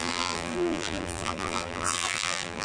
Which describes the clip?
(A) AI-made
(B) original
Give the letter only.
A